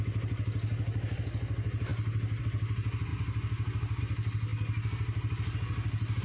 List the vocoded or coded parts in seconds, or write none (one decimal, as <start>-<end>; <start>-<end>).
none